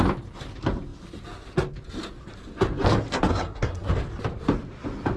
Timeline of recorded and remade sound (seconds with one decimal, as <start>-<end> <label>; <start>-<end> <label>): 0.0-3.3 recorded; 3.3-3.9 remade; 3.9-5.2 recorded